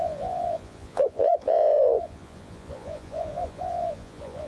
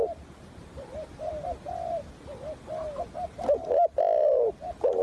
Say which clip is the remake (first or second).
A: first